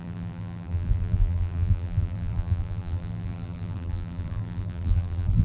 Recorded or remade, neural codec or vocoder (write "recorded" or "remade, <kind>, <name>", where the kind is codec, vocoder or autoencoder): remade, vocoder, BigVGAN v2